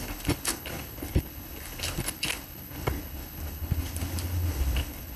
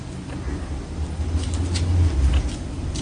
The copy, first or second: first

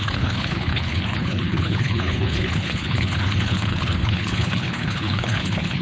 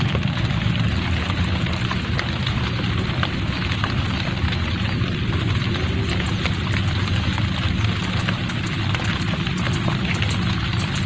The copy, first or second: first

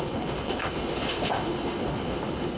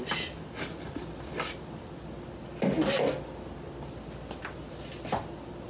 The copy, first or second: first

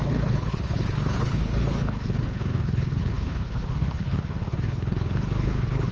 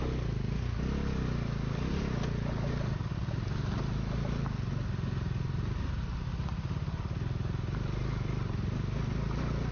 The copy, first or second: first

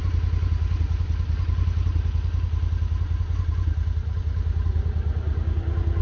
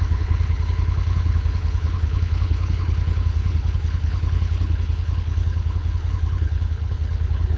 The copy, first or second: second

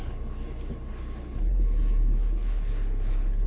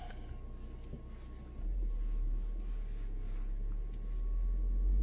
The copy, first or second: first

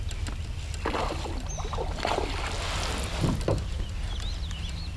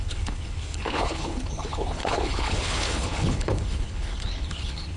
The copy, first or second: second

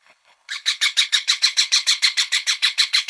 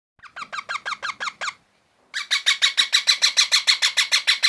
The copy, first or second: first